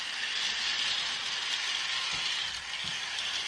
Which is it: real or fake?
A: real